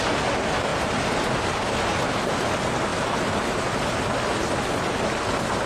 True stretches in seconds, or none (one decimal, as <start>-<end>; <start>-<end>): 0.0-5.7